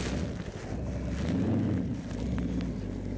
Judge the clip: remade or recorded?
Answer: recorded